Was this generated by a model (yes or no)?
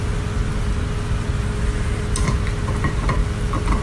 no